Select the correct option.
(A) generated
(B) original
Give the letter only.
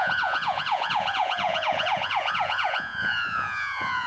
A